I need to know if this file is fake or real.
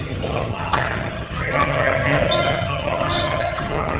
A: fake